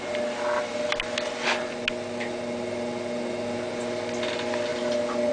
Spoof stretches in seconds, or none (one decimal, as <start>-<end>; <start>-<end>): none

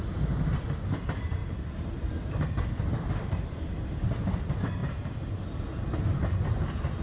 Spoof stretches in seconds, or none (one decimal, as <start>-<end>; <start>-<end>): 1.4-4.0; 4.8-5.6

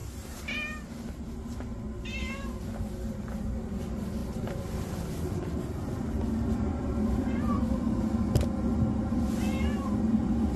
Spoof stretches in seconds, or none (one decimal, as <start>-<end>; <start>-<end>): 4.2-7.4